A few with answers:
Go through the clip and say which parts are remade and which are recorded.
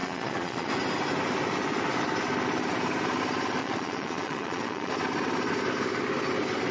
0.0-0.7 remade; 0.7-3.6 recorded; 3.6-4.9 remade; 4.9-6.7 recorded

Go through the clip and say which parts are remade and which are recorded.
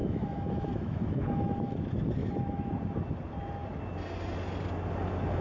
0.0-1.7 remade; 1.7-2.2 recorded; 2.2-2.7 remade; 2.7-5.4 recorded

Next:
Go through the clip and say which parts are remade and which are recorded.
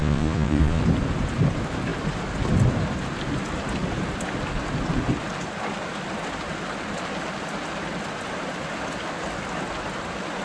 0.0-0.8 remade; 0.8-10.4 recorded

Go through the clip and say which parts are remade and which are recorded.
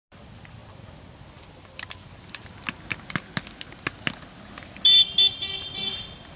0.0-6.4 recorded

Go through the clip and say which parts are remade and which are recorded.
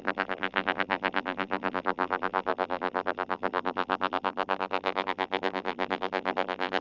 0.0-6.8 remade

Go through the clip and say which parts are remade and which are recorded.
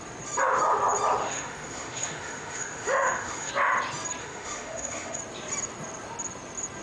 0.0-1.2 recorded; 1.2-3.5 remade; 3.5-4.2 recorded; 4.2-5.2 remade; 5.2-6.8 recorded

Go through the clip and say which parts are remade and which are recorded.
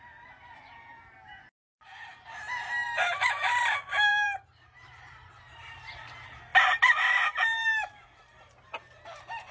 0.0-3.0 recorded; 3.0-3.6 remade; 3.6-4.1 recorded; 4.1-5.9 remade; 5.9-9.5 recorded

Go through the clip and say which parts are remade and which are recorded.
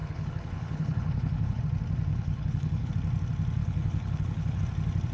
0.0-1.6 remade; 1.6-2.1 recorded; 2.1-2.9 remade; 2.9-3.6 recorded; 3.6-4.6 remade; 4.6-5.1 recorded